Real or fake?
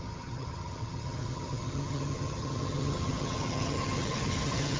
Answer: fake